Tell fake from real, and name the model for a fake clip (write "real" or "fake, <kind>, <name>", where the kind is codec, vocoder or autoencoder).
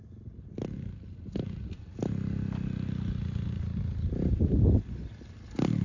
real